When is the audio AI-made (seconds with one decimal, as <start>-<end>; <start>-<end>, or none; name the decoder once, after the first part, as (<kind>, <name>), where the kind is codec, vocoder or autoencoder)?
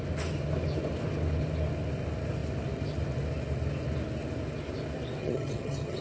5.2-6.0 (vocoder, HiFi-GAN)